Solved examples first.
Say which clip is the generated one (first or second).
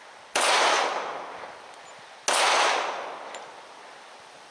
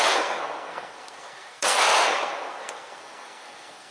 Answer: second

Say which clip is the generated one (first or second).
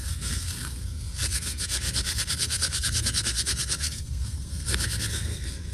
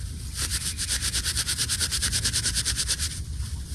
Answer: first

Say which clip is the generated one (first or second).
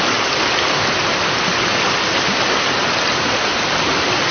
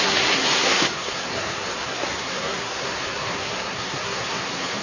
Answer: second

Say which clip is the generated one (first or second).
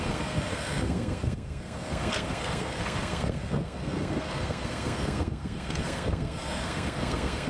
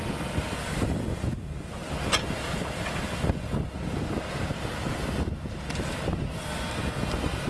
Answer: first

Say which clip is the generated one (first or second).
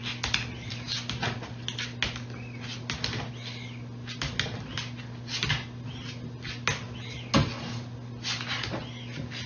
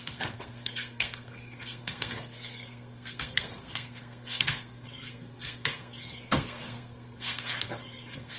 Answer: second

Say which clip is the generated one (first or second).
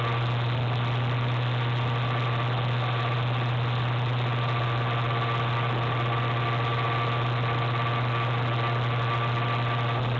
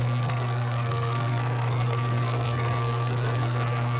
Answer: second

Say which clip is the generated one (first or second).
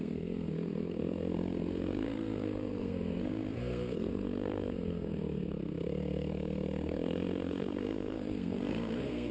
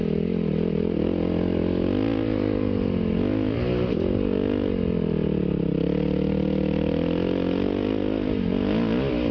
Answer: first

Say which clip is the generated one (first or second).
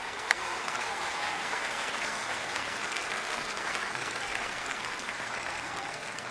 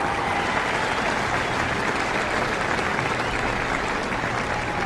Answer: first